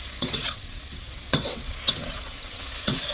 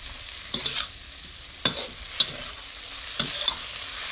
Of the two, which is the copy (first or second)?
first